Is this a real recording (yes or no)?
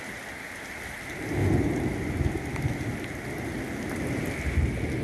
yes